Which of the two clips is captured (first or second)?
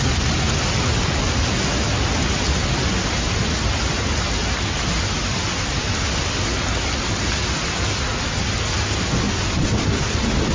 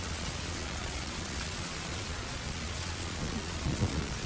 first